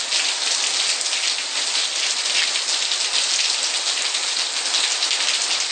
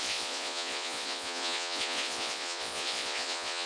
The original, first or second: first